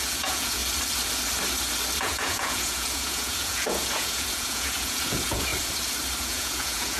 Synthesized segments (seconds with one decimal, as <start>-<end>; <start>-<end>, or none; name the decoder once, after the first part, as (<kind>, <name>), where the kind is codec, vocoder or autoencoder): 0.0-0.6 (vocoder, Vocos); 2.0-5.5; 6.2-7.0